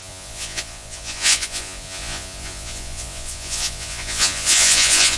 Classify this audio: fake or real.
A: fake